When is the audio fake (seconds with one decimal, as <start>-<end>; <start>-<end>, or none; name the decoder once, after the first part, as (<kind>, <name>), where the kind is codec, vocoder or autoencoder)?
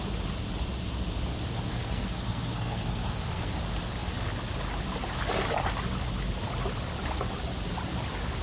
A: 1.7-3.6 (codec, SNAC)